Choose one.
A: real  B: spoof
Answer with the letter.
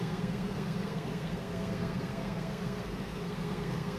B